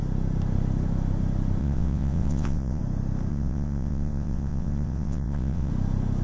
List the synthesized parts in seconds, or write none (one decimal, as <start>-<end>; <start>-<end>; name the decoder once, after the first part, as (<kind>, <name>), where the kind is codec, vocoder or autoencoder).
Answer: 1.6-2.8 (vocoder, WaveNeXt); 3.3-5.7